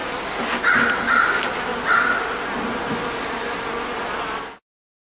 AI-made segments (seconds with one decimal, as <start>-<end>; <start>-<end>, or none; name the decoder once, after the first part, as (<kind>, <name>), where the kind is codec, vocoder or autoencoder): none